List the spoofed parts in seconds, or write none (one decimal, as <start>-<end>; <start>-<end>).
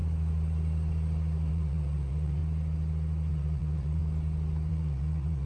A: 1.5-2.4; 3.3-4.0; 4.7-5.5